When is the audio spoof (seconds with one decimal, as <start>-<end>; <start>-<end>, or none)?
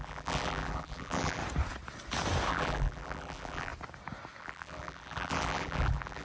0.0-1.4; 2.5-3.7; 4.4-6.2